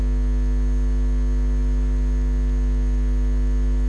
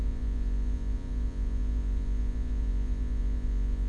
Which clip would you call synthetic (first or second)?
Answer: second